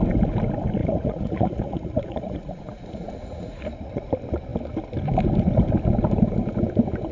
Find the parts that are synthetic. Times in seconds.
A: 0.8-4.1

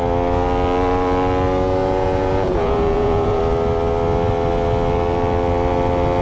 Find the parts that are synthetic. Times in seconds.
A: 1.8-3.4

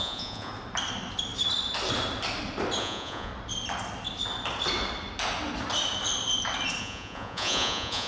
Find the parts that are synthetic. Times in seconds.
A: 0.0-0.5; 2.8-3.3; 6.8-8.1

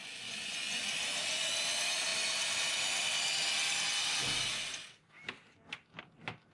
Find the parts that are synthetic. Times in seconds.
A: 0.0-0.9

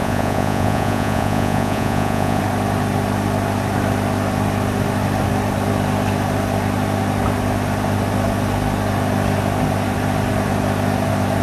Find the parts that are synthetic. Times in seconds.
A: 0.0-2.4